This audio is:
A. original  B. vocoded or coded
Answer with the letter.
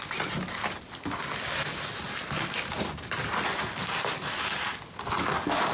A